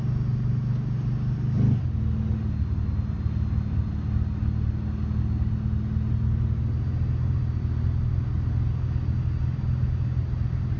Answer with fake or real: real